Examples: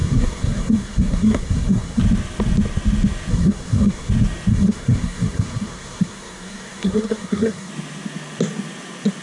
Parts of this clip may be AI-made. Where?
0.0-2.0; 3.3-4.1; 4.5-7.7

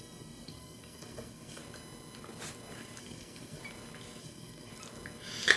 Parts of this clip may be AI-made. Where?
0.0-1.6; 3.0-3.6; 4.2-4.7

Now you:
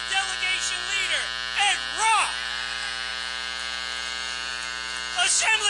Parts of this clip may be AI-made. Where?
none

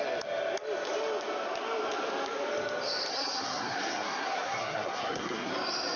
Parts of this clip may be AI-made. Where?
3.1-5.5

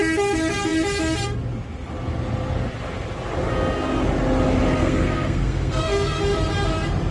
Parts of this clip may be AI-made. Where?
4.8-6.2

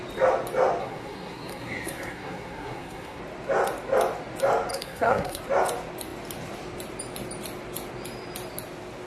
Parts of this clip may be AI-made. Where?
0.8-3.2; 4.7-5.4